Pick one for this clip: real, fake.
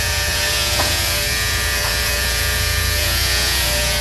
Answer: fake